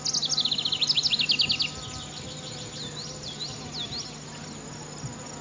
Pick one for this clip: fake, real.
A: real